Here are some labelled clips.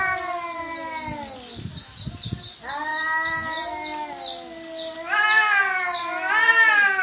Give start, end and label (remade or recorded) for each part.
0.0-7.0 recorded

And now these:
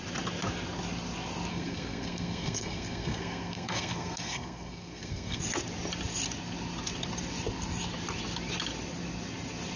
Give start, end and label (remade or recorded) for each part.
0.0-1.5 recorded; 1.5-5.4 remade; 5.4-9.8 recorded

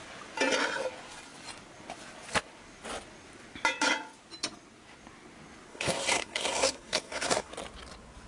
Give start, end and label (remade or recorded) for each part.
0.0-5.7 recorded; 5.7-7.5 remade; 7.5-8.3 recorded

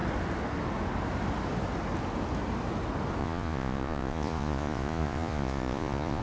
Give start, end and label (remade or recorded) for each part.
0.0-3.2 recorded; 3.2-6.2 remade

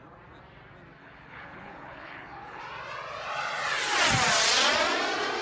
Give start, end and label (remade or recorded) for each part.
0.0-1.0 recorded; 1.0-2.6 remade; 2.6-5.4 recorded